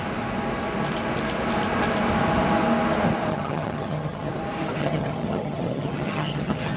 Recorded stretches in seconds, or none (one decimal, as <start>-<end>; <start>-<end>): 0.0-3.3; 4.3-4.8